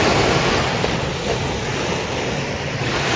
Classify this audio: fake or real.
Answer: real